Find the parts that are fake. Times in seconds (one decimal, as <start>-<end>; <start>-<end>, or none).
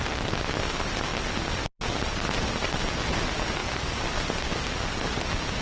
none